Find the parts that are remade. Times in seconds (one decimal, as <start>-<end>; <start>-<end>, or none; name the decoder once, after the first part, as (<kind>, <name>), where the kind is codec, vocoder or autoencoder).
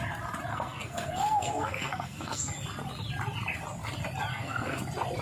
0.5-2.5 (codec, SNAC); 4.3-4.8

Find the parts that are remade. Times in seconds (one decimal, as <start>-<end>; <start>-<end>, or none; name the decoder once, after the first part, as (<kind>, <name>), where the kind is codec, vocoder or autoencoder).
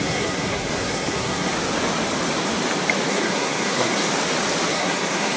0.0-1.5 (codec, SNAC); 3.1-4.1; 4.7-5.4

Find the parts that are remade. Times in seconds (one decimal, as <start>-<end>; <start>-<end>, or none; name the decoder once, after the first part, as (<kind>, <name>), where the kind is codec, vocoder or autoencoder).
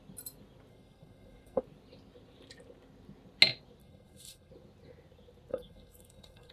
0.7-1.6 (codec, SNAC); 3.8-4.5; 5.5-6.5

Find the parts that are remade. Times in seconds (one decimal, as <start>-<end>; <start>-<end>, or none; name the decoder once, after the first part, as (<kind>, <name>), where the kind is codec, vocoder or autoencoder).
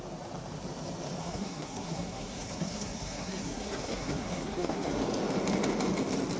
1.2-5.0 (codec, SNAC)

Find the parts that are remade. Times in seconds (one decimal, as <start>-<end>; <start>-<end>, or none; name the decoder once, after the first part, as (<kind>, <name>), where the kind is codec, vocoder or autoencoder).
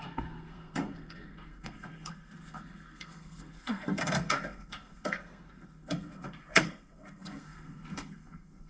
0.0-8.7 (codec, SNAC)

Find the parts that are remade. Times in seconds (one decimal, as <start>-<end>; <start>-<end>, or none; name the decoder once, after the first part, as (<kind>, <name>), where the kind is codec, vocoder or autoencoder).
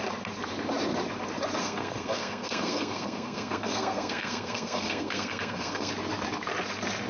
1.6-5.9 (codec, SNAC)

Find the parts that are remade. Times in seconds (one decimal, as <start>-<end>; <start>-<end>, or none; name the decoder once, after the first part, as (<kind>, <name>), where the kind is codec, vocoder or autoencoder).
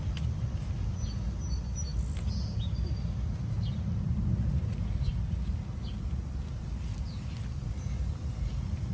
none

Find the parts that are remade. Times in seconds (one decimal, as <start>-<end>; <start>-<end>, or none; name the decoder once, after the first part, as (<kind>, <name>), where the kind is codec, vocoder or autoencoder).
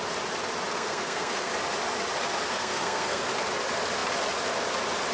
0.7-1.5 (codec, SNAC); 2.5-3.2